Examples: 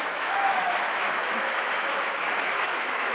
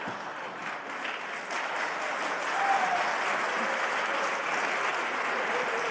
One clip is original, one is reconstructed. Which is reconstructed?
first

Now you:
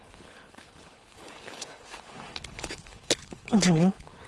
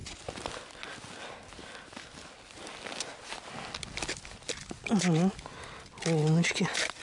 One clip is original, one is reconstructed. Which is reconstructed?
first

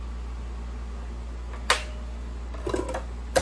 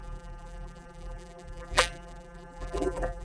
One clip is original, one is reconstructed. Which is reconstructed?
second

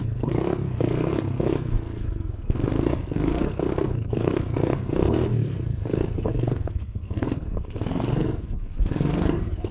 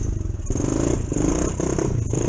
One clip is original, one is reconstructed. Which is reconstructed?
first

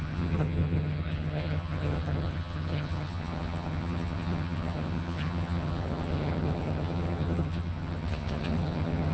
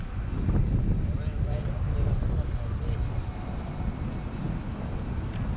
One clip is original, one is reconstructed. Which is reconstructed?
first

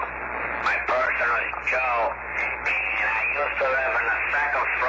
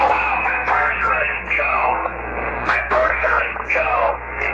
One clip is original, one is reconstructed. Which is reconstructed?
second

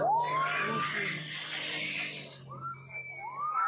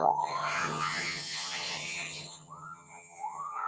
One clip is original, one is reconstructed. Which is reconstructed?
second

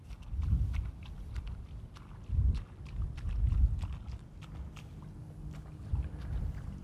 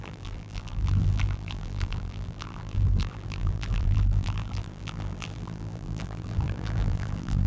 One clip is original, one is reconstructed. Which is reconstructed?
second